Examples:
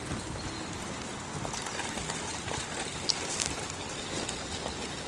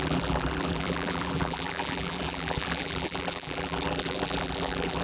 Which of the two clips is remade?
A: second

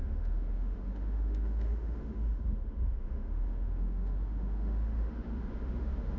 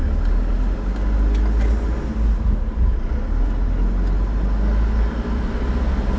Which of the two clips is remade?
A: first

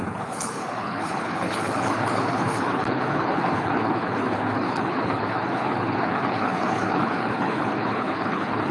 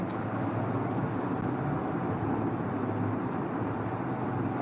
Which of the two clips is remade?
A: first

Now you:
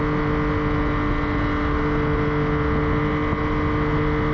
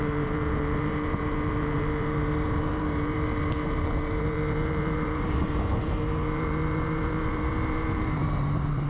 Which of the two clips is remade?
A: second